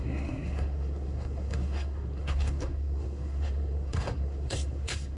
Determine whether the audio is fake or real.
fake